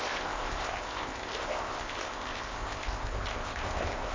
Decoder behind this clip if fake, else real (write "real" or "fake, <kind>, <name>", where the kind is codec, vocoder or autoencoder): fake, codec, ZipCodec